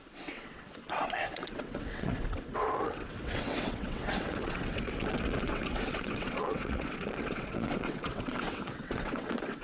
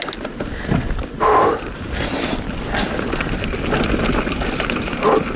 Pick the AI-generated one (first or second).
first